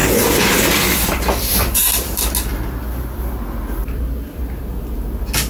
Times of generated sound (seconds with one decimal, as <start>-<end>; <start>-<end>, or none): 0.0-2.2; 3.8-4.4